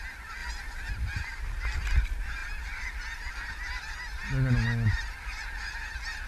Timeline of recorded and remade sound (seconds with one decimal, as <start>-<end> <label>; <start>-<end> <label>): 0.0-6.3 recorded